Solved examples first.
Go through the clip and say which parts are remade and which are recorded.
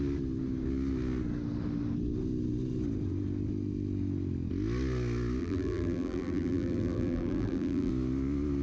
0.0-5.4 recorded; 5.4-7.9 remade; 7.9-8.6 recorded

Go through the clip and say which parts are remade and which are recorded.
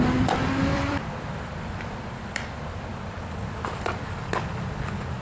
0.0-0.7 recorded; 0.7-3.8 remade; 3.8-5.2 recorded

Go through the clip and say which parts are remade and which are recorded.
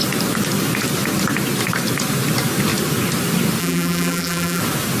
0.0-3.6 recorded; 3.6-4.6 remade; 4.6-5.0 recorded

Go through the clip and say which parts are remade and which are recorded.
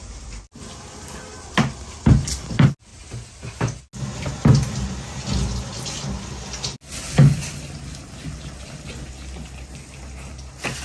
0.0-2.9 recorded; 2.9-3.8 remade; 3.8-10.8 recorded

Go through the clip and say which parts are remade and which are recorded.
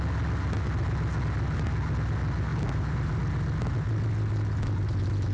0.0-2.5 recorded; 2.5-3.2 remade; 3.2-5.3 recorded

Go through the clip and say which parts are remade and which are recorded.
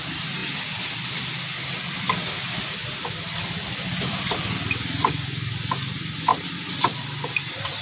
0.0-0.4 recorded; 0.4-5.1 remade; 5.1-6.3 recorded; 6.3-7.8 remade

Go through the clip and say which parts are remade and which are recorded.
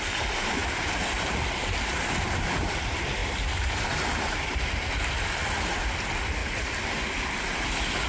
0.0-8.1 recorded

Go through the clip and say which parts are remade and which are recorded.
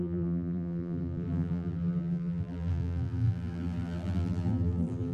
0.0-5.1 remade